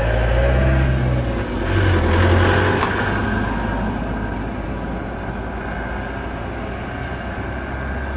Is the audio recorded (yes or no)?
yes